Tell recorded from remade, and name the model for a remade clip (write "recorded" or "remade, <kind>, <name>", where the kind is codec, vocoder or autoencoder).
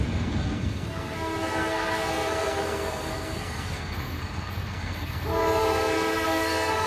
remade, codec, SNAC